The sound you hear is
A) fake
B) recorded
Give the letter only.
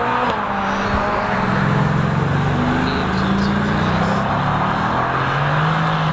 B